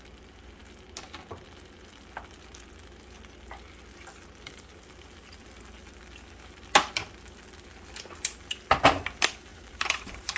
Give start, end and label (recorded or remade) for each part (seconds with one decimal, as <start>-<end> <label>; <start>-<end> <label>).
0.0-9.5 recorded; 9.5-10.4 remade